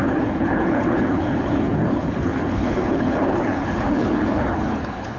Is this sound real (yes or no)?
no